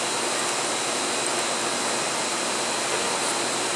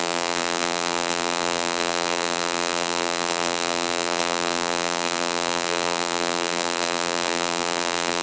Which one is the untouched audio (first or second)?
first